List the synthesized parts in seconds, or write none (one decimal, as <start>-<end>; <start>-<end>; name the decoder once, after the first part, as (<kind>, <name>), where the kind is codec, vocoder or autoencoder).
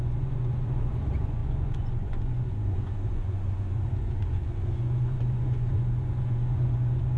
0.0-7.2 (vocoder, Vocos)